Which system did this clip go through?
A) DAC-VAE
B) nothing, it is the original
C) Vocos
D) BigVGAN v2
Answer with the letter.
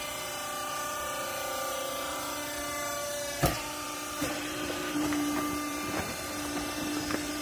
D